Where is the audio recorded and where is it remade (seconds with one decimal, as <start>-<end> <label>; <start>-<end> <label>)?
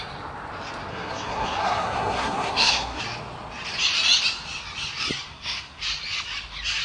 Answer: 0.0-0.9 recorded; 0.9-3.0 remade; 3.0-5.3 recorded; 5.3-5.8 remade; 5.8-6.8 recorded